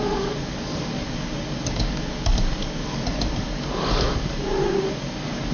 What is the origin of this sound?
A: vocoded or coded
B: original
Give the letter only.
A